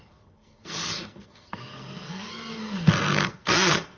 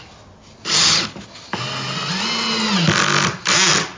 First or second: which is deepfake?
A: first